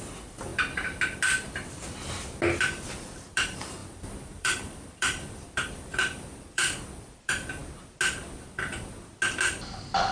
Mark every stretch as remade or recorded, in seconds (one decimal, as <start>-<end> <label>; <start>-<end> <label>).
0.0-0.5 remade; 0.5-2.6 recorded; 2.6-7.6 remade; 7.6-10.1 recorded